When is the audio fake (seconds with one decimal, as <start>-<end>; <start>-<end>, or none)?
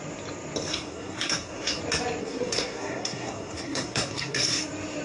0.7-1.8; 2.2-4.6